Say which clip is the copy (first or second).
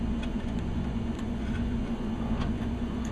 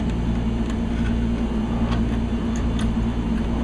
first